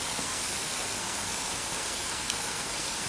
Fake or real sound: fake